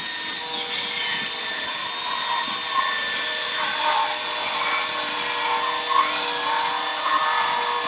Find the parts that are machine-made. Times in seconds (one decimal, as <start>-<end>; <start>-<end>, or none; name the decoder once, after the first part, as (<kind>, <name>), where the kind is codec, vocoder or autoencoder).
none